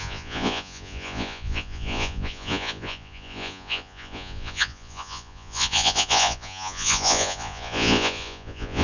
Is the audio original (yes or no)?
no